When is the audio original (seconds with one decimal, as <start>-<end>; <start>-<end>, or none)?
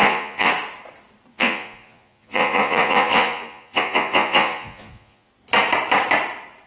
0.5-1.3; 5.3-6.7